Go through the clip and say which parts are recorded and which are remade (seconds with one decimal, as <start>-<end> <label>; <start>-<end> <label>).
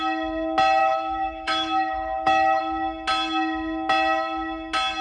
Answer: 0.0-0.8 recorded; 0.8-2.6 remade; 2.6-5.0 recorded